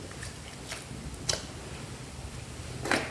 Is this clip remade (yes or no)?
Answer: no